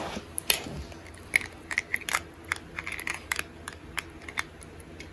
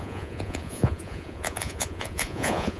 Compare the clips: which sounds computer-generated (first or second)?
second